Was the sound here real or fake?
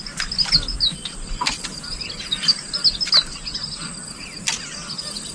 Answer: real